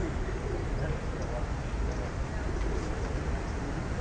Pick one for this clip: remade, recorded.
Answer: recorded